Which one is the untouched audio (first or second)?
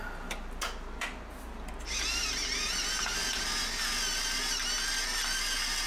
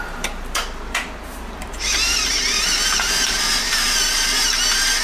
first